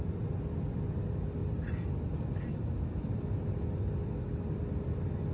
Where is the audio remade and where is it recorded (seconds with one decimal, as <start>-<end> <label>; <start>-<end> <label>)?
0.0-5.3 recorded